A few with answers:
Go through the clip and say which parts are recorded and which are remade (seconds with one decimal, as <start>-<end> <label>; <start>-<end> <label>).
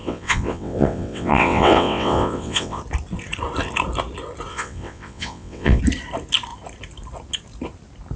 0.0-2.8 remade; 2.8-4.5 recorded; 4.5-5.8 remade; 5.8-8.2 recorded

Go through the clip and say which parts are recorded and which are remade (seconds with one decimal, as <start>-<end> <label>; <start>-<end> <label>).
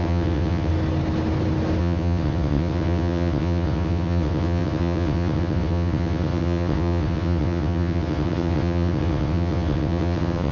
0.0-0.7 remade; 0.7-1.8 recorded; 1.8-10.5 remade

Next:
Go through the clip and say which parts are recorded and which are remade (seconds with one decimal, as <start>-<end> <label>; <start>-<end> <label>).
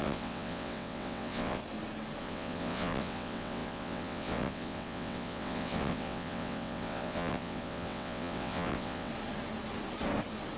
0.0-1.6 remade; 1.6-2.2 recorded; 2.2-9.1 remade; 9.1-10.6 recorded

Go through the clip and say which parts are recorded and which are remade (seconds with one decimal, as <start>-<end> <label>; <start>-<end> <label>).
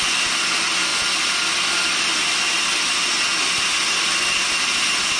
0.0-5.2 recorded